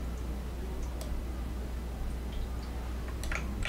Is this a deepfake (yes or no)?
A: no